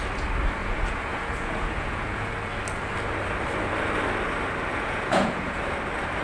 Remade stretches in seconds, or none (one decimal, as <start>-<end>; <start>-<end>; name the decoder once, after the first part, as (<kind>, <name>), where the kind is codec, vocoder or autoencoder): 0.6-2.3 (vocoder, Vocos); 4.7-5.6